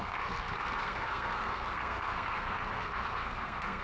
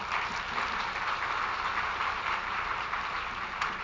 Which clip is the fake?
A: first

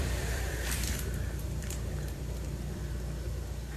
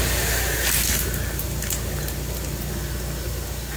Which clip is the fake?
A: first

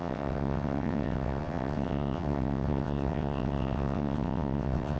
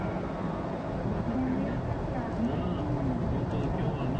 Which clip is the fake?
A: first